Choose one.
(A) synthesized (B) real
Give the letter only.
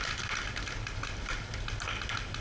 B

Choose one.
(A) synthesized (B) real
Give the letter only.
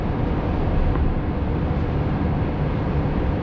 B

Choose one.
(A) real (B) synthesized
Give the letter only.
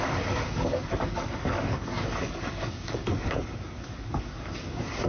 B